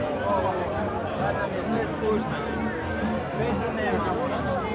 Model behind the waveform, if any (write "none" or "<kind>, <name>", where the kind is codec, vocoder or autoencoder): none